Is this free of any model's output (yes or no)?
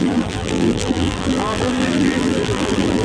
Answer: no